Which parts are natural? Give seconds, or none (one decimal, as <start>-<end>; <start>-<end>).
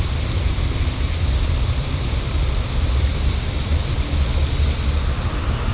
0.0-0.4; 3.8-5.7